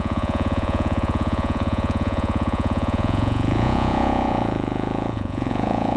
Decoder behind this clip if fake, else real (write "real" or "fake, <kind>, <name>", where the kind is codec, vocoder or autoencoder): fake, vocoder, Vocos